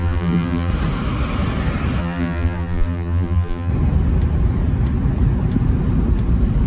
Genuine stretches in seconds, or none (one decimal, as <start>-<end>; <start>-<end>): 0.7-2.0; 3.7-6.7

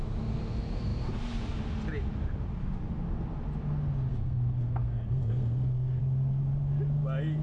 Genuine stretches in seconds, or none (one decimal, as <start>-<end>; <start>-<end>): 0.0-4.1; 6.0-7.4

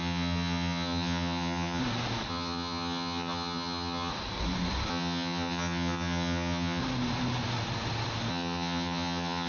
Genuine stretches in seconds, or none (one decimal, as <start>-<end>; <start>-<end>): 1.8-2.3; 4.1-4.9; 6.8-8.3

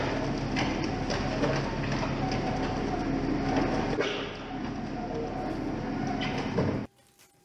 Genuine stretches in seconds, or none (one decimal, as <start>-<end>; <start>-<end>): 0.0-7.4

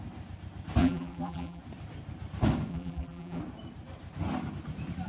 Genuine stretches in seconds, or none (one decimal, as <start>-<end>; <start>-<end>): 0.0-0.8; 1.6-2.7; 3.4-5.1

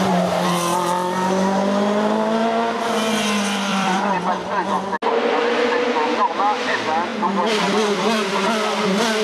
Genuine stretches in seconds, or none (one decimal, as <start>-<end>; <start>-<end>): 0.0-3.7; 4.3-7.1; 8.4-9.2

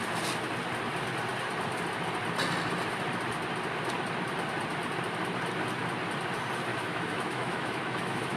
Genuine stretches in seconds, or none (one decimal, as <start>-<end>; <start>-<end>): 0.0-6.7

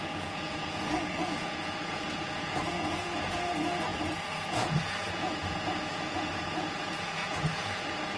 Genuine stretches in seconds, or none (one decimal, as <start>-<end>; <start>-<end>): none